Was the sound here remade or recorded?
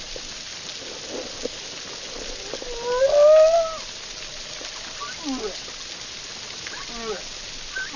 recorded